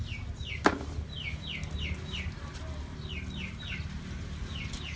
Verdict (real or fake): real